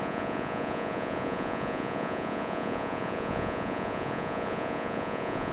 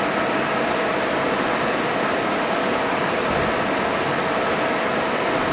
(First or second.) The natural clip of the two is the second